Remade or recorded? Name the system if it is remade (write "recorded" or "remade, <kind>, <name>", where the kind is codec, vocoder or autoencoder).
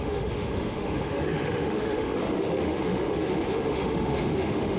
remade, autoencoder, DAC-VAE